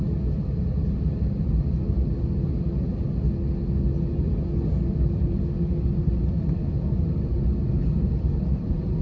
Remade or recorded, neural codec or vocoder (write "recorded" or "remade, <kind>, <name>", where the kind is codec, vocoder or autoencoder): recorded